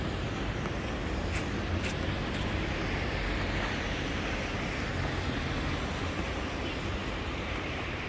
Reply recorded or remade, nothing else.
recorded